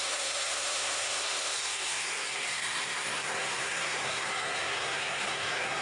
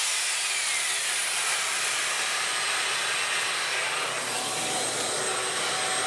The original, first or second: second